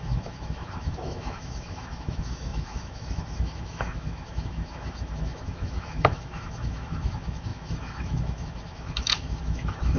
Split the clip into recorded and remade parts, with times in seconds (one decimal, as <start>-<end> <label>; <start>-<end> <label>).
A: 0.0-10.0 remade